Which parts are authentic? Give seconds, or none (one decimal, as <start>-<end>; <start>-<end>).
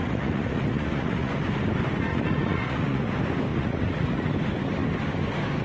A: 1.3-2.1; 3.1-3.5; 4.3-5.6